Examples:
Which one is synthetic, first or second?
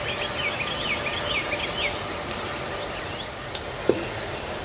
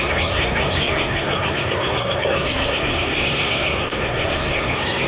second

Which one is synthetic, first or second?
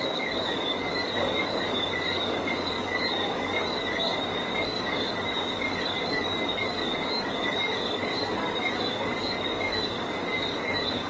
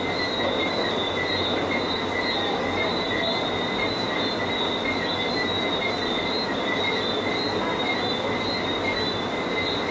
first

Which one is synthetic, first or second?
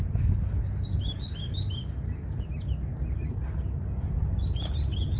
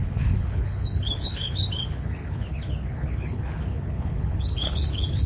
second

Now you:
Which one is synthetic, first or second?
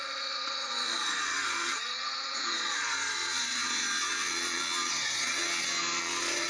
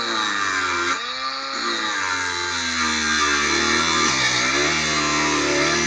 first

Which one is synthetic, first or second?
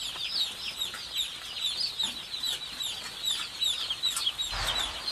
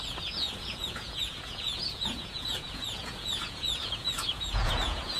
second